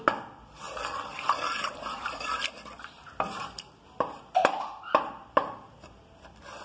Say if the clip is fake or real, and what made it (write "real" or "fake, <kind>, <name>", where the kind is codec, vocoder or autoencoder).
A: real